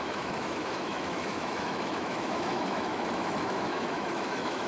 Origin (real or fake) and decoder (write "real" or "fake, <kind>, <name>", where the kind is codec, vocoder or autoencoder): fake, autoencoder, DAC-VAE